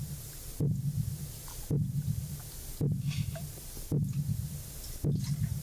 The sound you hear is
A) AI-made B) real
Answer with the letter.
B